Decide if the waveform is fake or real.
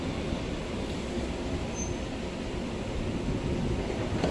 real